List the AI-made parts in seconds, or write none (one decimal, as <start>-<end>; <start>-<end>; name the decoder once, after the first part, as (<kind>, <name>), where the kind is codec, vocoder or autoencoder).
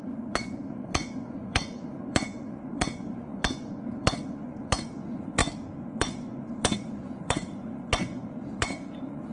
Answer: 0.0-5.4 (vocoder, Vocos); 6.0-9.3